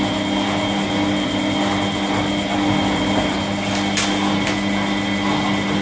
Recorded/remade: recorded